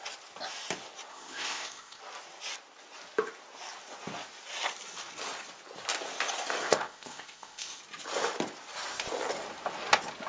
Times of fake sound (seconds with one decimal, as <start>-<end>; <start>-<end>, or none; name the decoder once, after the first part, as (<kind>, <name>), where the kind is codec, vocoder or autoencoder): 1.1-2.0 (codec, ZipCodec); 6.6-7.8